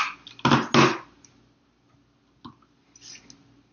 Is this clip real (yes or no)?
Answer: yes